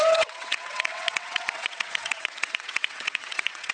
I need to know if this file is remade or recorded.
remade